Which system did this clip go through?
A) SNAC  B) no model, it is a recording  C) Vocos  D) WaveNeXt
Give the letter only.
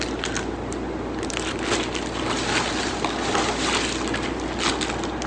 B